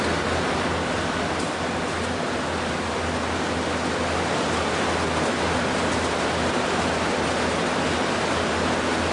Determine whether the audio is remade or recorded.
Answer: recorded